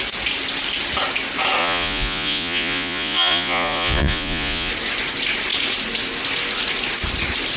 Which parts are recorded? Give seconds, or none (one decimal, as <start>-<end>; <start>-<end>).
0.0-1.6; 4.7-7.6